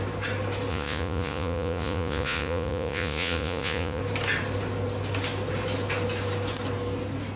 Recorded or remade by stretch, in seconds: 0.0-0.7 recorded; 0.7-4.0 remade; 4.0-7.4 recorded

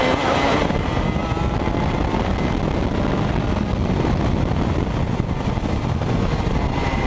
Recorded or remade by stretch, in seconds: 0.0-7.1 recorded

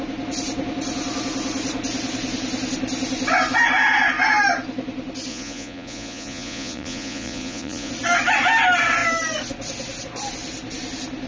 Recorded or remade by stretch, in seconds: 0.0-5.3 recorded; 5.3-7.9 remade; 7.9-11.3 recorded

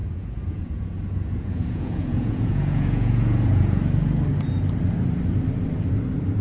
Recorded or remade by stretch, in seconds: 0.0-3.8 remade; 3.8-6.4 recorded